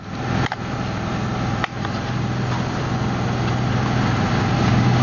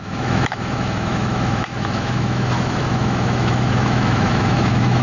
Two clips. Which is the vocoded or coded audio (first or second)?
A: second